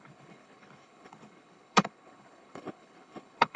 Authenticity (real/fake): fake